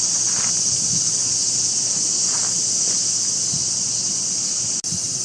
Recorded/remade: recorded